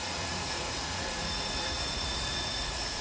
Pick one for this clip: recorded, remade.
remade